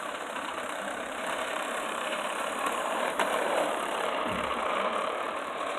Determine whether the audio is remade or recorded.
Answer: remade